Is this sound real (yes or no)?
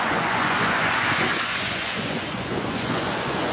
no